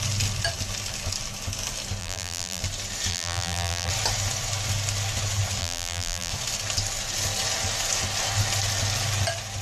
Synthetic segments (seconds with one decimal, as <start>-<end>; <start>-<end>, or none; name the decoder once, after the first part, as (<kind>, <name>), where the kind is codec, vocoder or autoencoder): 2.0-2.6 (vocoder, BigVGAN v2); 3.1-3.9; 5.6-6.3